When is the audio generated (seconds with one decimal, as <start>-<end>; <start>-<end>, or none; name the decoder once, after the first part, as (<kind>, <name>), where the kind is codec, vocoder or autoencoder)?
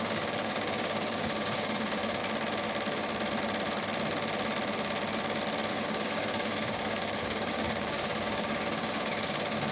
0.0-2.2 (codec, DAC); 5.7-9.7